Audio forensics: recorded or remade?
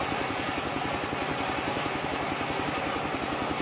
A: recorded